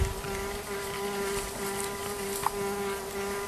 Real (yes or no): yes